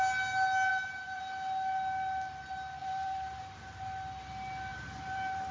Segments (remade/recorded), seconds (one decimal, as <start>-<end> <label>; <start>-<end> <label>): 0.0-0.7 recorded; 0.7-1.2 remade; 1.2-2.8 recorded; 2.8-3.4 remade; 3.4-4.7 recorded; 4.7-5.5 remade